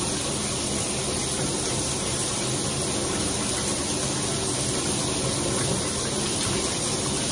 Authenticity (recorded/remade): recorded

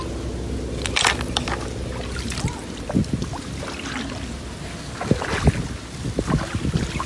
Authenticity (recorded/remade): recorded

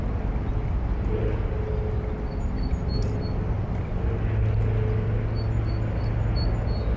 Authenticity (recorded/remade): recorded